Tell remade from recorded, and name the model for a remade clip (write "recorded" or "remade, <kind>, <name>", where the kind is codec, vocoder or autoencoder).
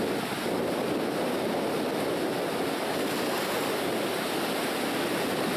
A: recorded